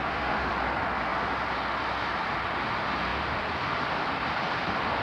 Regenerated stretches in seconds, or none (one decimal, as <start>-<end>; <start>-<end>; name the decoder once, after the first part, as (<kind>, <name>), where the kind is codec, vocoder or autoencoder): 0.0-0.5 (autoencoder, DAC-VAE)

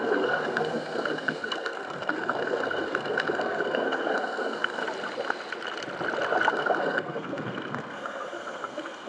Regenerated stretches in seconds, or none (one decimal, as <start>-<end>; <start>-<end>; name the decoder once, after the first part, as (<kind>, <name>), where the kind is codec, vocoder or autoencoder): 0.0-4.8 (codec, SNAC); 6.5-9.1

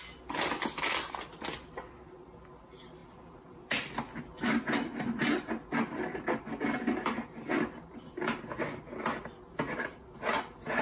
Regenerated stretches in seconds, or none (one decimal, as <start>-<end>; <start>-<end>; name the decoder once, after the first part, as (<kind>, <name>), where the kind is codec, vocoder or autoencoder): 3.0-3.6 (vocoder, BigVGAN v2)